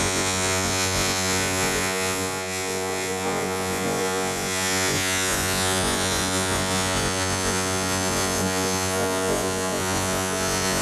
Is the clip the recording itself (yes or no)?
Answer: no